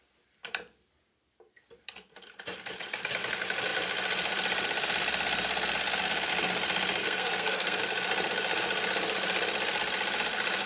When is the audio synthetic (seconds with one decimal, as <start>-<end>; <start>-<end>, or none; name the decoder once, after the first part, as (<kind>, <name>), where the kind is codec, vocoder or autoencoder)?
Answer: 7.0-7.8 (codec, SNAC)